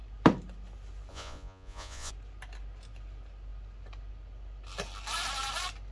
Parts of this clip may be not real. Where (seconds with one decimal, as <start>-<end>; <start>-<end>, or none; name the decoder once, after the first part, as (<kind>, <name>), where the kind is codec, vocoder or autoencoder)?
1.1-2.1 (vocoder, Vocos)